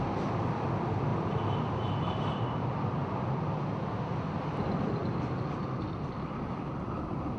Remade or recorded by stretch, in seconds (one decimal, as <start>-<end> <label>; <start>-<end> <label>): 0.0-1.1 remade; 1.1-2.4 recorded; 2.4-3.0 remade; 3.0-4.6 recorded; 4.6-7.4 remade